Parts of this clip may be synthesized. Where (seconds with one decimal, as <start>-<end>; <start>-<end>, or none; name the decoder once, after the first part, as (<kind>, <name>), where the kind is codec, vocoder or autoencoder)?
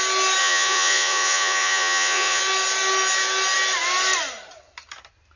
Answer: 0.4-2.4 (vocoder, Vocos)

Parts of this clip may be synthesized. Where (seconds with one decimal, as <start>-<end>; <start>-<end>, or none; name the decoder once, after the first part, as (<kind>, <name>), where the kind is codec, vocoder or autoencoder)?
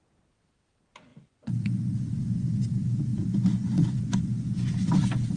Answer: 1.1-1.8 (vocoder, Vocos); 3.1-4.7